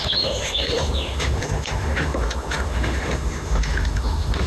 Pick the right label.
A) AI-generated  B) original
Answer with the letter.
A